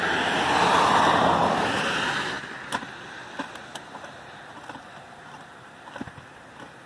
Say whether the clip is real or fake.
real